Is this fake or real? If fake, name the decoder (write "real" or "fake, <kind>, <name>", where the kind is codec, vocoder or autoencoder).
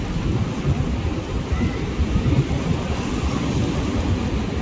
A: real